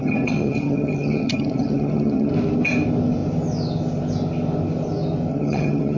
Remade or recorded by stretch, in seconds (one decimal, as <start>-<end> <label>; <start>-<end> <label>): 0.0-2.3 remade; 2.3-5.3 recorded; 5.3-6.0 remade